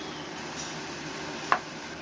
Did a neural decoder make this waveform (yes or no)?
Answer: no